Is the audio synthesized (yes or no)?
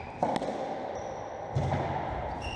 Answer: no